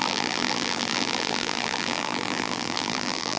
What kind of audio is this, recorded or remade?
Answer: remade